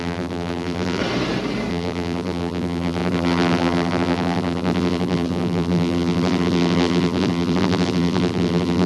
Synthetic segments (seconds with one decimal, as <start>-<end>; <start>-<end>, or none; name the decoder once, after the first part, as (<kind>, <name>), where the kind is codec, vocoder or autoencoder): 0.0-1.0 (vocoder, BigVGAN v2); 1.7-8.9